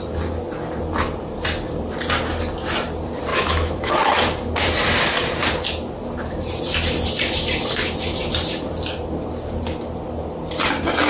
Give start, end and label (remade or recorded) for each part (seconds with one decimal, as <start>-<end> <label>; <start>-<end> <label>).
0.0-3.3 recorded; 3.3-4.1 remade; 4.1-11.1 recorded